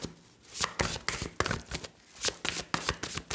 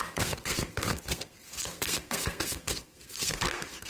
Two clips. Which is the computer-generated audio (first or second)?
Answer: second